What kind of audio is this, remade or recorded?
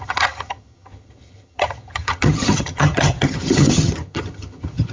remade